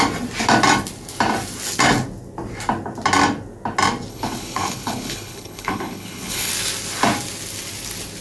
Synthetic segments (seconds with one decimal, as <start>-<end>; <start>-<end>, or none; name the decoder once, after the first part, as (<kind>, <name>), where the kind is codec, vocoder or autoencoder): 4.1-6.5 (codec, HILCodec)